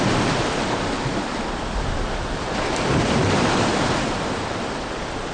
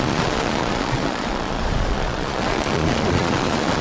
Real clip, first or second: first